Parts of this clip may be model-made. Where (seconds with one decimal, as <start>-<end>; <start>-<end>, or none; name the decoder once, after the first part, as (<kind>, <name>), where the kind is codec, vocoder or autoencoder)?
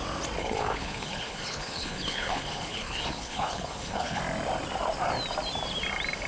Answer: 0.4-4.2 (codec, HILCodec)